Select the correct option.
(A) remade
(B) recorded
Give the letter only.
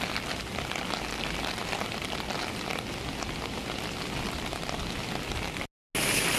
B